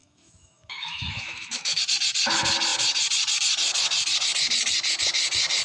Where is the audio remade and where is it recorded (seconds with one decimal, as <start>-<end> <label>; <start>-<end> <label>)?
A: 0.0-1.8 remade; 1.8-5.6 recorded